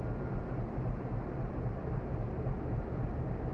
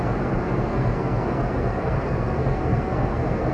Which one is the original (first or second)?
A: first